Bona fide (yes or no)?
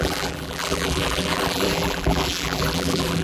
no